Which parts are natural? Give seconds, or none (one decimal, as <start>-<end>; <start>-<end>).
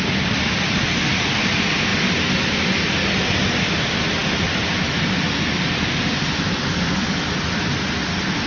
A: 0.0-8.5